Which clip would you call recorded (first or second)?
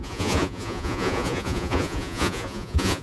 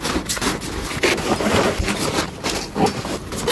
second